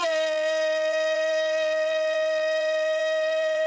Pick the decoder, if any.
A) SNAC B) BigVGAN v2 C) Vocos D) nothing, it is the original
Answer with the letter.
B